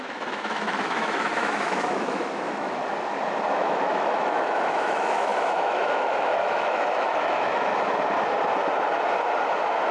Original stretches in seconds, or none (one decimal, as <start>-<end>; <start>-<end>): 2.9-3.5; 7.7-9.9